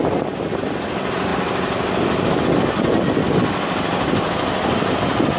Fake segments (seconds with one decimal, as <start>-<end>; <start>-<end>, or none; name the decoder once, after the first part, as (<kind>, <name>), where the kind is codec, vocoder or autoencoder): none

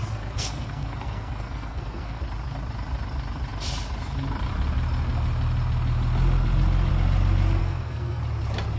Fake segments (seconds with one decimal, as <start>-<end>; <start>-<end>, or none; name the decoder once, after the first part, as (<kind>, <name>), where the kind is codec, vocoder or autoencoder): 0.0-2.2 (codec, SNAC); 7.6-8.2

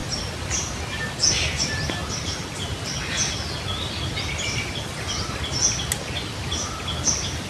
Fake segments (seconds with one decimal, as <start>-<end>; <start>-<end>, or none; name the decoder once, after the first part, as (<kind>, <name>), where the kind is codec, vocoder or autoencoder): none

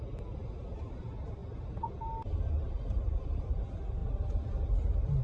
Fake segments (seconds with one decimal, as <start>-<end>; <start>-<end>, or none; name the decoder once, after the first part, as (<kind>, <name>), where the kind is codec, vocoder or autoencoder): none

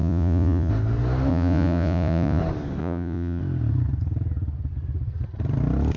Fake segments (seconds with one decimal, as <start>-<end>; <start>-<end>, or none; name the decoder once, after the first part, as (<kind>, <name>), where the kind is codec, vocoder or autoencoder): 0.0-0.7 (vocoder, Vocos); 1.3-2.4; 2.8-3.4

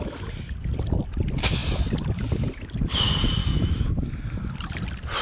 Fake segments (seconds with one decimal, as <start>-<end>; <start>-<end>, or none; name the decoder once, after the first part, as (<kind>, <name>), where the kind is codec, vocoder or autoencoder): 3.4-4.1 (autoencoder, DAC-VAE)

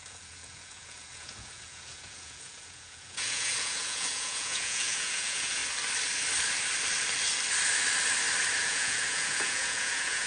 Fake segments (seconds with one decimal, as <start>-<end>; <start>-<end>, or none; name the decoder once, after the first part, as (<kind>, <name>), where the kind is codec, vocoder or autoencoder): 0.0-5.6 (vocoder, Vocos); 8.6-10.3